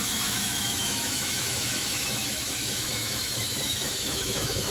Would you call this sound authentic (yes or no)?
no